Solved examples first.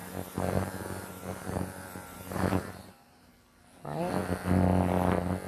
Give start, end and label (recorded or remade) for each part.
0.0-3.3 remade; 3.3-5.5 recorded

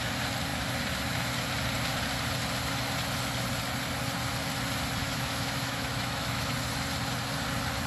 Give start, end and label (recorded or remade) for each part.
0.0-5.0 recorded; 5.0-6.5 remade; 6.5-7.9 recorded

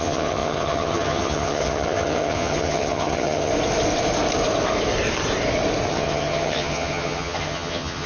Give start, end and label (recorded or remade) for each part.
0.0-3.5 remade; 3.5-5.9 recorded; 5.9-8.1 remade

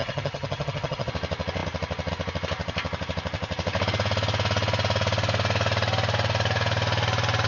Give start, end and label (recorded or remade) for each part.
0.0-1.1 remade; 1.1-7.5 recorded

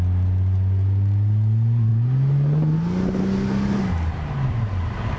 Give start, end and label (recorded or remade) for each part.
0.0-5.2 recorded

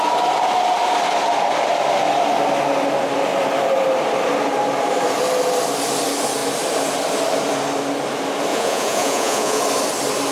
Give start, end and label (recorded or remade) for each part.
0.0-8.5 recorded; 8.5-9.6 remade; 9.6-10.3 recorded

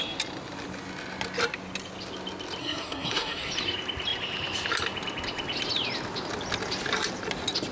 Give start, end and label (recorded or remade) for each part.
0.0-2.6 recorded; 2.6-3.5 remade; 3.5-7.7 recorded